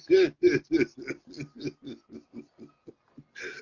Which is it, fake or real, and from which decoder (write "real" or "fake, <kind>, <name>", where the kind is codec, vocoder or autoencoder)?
real